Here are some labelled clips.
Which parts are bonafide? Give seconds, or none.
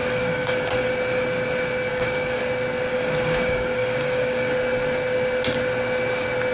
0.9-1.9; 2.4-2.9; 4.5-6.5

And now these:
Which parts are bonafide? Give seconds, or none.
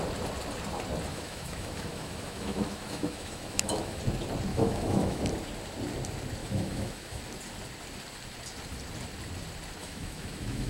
0.0-1.1; 4.0-4.5; 5.2-6.4; 7.2-9.8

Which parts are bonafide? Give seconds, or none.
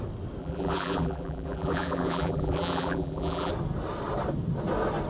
0.0-0.4; 3.5-5.1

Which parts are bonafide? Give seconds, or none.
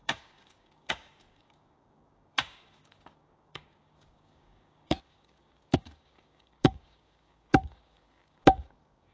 none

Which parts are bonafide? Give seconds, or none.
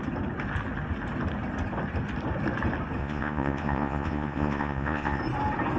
0.0-3.0; 5.2-5.8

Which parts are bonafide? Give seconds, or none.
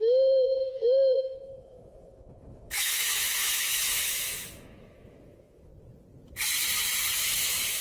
5.7-7.2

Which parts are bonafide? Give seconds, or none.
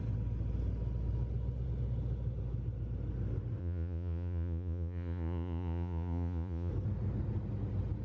0.0-3.6; 6.7-8.0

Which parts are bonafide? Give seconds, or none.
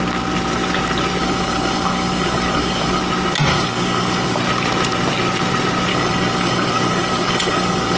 0.0-1.2; 3.0-3.5; 4.4-5.9